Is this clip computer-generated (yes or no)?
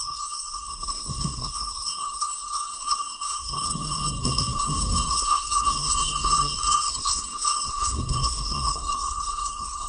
yes